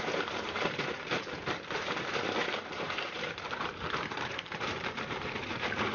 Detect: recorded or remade remade